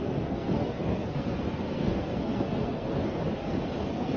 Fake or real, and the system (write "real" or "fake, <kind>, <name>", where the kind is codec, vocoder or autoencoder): fake, codec, SNAC